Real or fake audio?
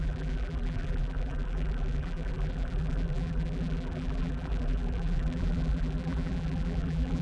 fake